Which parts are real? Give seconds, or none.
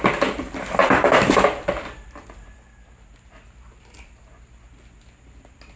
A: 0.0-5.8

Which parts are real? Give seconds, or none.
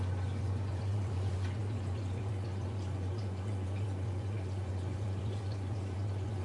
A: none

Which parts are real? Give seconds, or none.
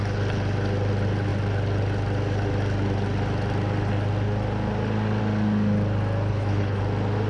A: 0.0-6.3; 6.8-7.3